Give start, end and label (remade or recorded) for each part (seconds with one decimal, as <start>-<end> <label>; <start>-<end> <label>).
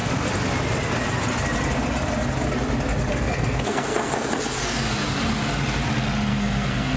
0.0-3.1 recorded; 3.1-4.3 remade; 4.3-6.3 recorded; 6.3-7.0 remade